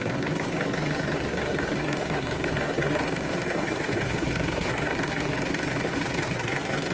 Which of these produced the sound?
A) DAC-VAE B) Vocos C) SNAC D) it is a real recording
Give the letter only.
C